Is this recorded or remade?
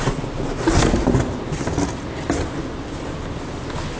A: recorded